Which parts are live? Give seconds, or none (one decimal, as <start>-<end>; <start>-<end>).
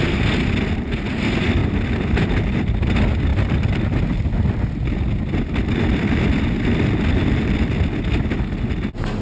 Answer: 0.0-1.6; 2.8-3.3; 4.0-9.2